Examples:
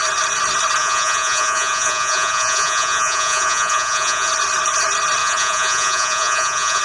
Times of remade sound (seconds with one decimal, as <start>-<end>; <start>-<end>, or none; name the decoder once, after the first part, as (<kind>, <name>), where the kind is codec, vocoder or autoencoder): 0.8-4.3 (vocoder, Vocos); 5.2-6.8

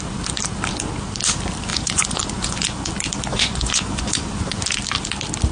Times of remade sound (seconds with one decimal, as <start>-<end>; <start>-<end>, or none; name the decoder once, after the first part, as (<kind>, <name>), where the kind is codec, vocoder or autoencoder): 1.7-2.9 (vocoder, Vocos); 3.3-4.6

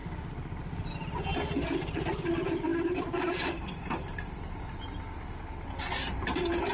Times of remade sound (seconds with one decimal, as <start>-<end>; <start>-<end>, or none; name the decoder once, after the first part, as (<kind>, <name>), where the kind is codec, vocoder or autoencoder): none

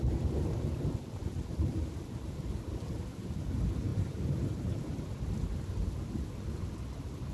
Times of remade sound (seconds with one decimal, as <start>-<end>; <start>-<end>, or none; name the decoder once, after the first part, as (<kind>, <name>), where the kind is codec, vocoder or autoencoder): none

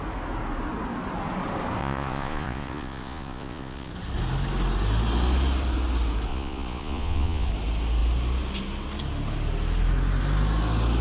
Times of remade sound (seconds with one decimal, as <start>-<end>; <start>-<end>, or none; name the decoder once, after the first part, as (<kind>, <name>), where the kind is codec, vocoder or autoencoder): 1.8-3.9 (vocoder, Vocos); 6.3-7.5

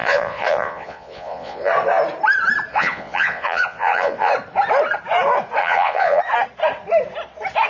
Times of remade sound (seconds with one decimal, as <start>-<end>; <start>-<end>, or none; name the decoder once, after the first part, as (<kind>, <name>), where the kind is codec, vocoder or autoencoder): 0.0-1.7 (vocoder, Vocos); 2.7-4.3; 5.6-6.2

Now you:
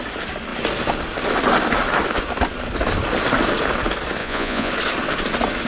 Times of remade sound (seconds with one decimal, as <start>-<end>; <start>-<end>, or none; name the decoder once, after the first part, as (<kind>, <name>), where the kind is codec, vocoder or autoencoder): 4.2-4.7 (vocoder, Vocos)

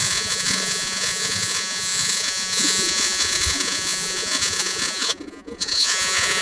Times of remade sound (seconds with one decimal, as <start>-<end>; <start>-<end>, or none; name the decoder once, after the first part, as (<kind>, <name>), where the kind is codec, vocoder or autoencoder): 0.0-6.4 (vocoder, Vocos)